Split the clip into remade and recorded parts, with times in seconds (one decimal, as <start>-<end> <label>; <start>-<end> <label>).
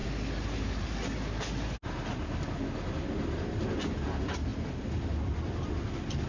0.0-6.3 recorded